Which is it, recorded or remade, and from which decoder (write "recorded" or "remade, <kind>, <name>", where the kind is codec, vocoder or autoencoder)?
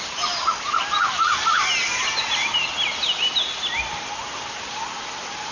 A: recorded